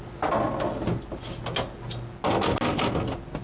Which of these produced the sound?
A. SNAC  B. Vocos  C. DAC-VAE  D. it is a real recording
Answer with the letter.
D